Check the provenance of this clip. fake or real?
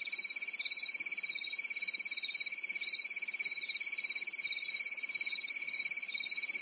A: real